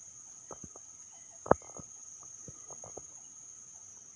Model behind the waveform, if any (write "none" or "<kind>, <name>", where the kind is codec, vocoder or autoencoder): none